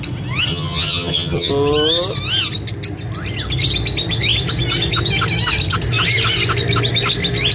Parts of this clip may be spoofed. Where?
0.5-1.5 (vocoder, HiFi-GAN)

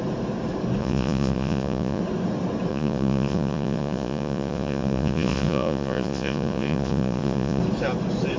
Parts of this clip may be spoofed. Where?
0.8-2.0 (vocoder, Vocos); 2.7-7.6

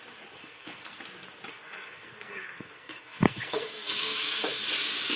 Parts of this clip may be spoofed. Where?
0.4-1.0 (codec, SNAC); 1.5-4.6

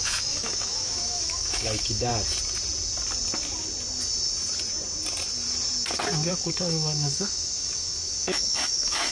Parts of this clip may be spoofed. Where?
0.0-2.1 (autoencoder, DAC-VAE); 6.3-9.1

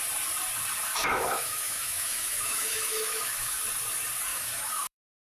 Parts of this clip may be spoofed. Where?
0.9-3.6 (autoencoder, DAC-VAE); 4.3-5.3

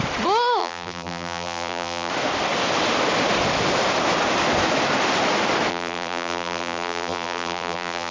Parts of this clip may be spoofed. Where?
0.6-2.1 (vocoder, BigVGAN v2); 5.7-8.1